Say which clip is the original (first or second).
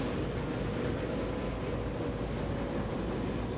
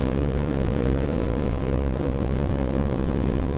first